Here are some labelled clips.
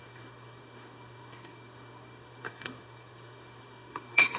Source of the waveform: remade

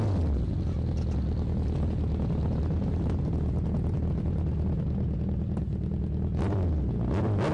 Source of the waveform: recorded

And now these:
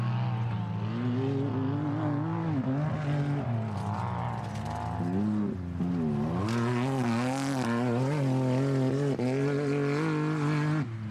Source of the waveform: recorded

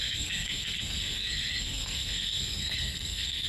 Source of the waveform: remade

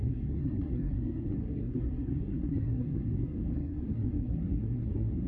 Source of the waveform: remade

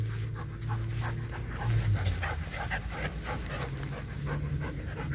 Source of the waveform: recorded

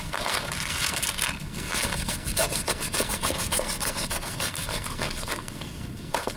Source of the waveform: remade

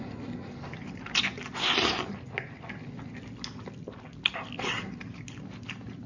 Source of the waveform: recorded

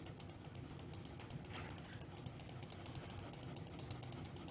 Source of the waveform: recorded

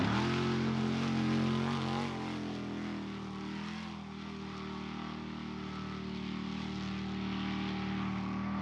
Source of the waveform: recorded